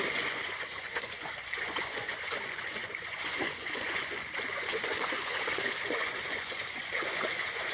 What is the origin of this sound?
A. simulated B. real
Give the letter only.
A